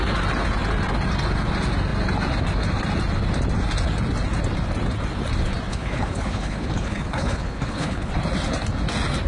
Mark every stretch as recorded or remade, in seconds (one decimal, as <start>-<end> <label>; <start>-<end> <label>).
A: 0.0-5.7 recorded; 5.7-8.1 remade; 8.1-9.3 recorded